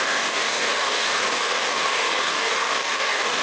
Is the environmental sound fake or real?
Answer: fake